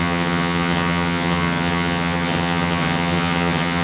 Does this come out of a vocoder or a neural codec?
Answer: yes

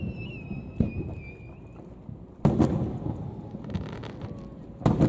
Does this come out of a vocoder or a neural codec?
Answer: no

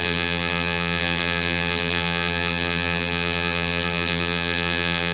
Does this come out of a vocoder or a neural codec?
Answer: yes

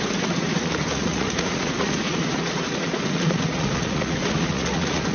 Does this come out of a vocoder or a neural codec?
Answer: yes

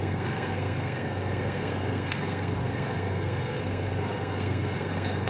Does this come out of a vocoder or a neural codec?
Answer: yes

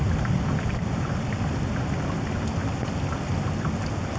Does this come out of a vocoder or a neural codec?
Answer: no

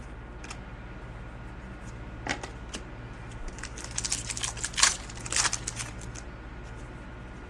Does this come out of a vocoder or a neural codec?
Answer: no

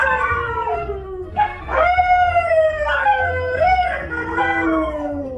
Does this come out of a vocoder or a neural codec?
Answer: yes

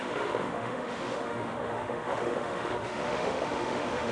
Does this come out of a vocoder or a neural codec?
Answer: yes